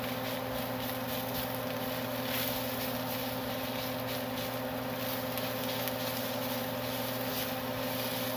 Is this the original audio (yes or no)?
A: yes